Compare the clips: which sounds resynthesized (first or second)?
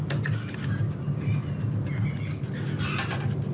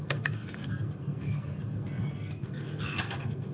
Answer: second